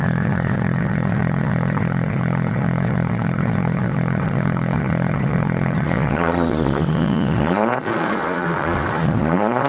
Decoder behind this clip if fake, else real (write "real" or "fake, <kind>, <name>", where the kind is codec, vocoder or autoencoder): fake, vocoder, Vocos